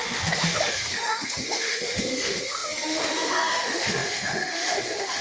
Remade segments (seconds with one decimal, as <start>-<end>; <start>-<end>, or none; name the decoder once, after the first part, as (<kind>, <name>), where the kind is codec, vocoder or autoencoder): 0.0-5.2 (autoencoder, DAC-VAE)